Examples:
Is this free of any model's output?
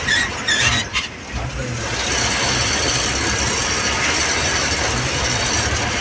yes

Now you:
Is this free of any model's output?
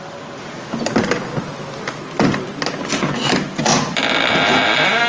yes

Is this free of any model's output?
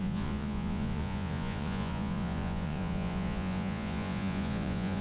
no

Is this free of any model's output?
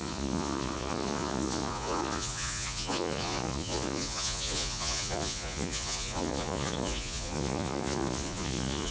no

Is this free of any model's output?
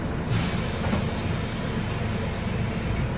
yes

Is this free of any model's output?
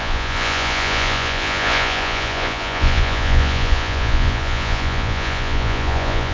no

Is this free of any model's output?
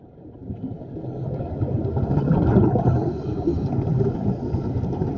yes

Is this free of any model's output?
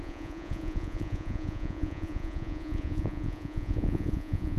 no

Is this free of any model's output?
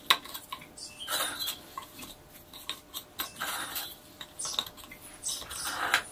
yes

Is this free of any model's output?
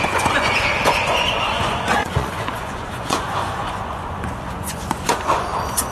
no